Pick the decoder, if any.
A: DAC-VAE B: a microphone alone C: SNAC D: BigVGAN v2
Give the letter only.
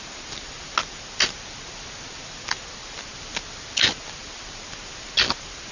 B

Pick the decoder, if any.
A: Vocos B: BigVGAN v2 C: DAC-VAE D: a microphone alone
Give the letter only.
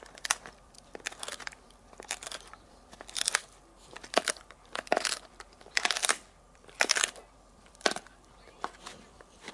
B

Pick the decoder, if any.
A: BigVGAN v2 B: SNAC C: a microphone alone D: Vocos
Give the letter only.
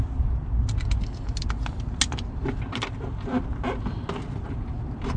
C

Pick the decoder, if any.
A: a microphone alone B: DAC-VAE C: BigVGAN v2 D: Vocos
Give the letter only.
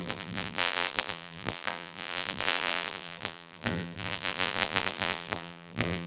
C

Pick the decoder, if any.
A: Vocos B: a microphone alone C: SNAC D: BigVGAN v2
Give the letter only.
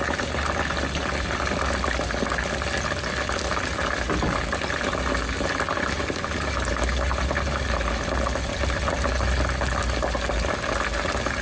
B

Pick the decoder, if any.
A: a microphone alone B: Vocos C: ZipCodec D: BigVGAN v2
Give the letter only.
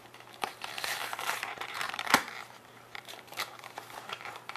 D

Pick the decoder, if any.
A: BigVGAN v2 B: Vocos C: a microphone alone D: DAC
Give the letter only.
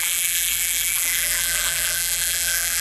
A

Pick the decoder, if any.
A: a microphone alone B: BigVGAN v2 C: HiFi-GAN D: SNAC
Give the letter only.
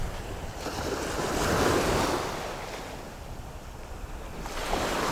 A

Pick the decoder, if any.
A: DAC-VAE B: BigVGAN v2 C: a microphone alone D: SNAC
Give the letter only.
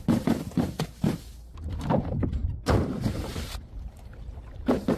B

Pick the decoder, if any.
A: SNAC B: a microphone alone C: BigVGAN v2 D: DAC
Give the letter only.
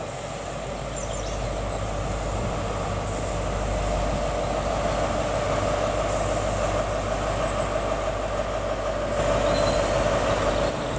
B